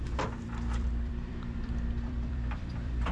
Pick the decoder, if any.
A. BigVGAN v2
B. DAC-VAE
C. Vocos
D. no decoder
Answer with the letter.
A